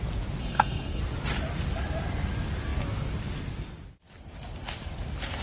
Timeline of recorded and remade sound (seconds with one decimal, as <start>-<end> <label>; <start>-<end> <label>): 0.0-0.4 recorded; 0.4-1.0 remade; 1.0-5.4 recorded